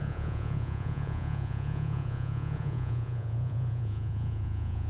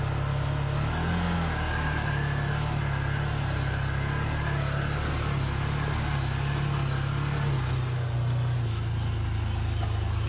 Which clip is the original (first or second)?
second